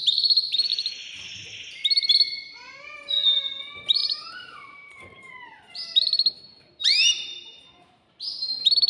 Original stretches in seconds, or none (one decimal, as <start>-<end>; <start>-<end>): 0.0-4.0; 8.5-8.9